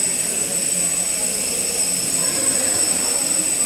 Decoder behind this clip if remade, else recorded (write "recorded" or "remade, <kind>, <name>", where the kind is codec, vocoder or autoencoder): remade, vocoder, BigVGAN v2